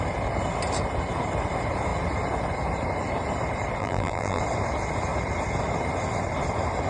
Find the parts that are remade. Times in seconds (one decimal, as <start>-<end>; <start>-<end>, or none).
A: 3.8-4.4

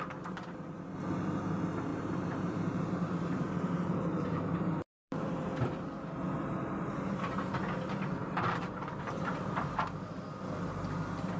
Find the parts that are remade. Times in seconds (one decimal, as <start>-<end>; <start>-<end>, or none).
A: 1.9-6.0; 8.2-10.2

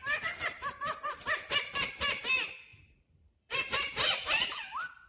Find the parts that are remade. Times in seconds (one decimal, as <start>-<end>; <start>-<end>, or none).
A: 0.0-5.1

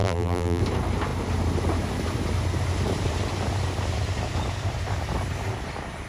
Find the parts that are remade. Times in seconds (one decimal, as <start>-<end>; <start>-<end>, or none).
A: 0.0-0.6

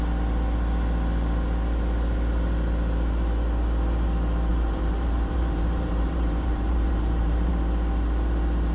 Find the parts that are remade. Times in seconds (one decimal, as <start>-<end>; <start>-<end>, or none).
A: 4.5-7.5